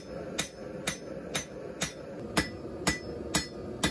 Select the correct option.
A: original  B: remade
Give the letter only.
A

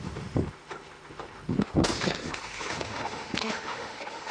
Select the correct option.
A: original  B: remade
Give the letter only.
B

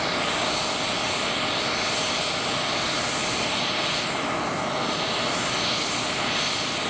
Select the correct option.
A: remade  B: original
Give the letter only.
B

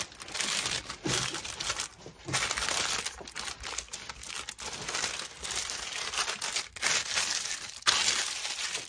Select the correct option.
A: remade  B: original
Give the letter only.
B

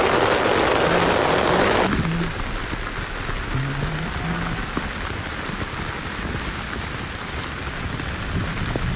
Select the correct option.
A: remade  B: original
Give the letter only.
B